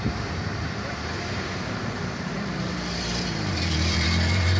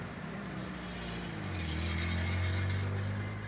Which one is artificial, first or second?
first